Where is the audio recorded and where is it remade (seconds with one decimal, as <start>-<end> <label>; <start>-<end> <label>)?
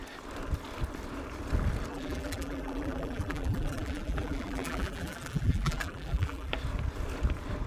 0.0-1.9 recorded; 1.9-6.5 remade; 6.5-7.7 recorded